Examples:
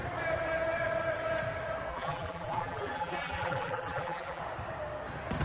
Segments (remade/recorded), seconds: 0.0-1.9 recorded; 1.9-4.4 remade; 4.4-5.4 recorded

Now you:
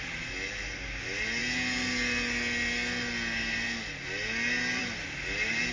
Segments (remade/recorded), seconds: 0.0-5.7 recorded

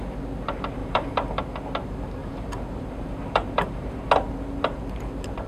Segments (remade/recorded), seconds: 0.0-0.8 recorded; 0.8-1.4 remade; 1.4-2.2 recorded; 2.2-4.0 remade; 4.0-5.5 recorded

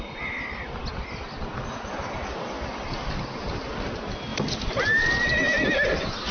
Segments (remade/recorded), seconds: 0.0-4.3 recorded; 4.3-4.8 remade; 4.8-6.3 recorded

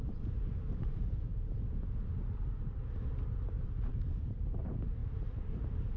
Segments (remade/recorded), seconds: 0.0-1.3 remade; 1.3-3.1 recorded; 3.1-6.0 remade